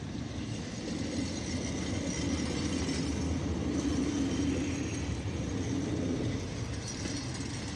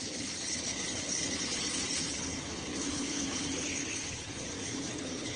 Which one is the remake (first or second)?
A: second